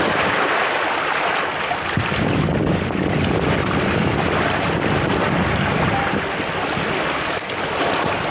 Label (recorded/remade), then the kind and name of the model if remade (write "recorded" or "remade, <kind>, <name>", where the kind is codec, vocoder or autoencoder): recorded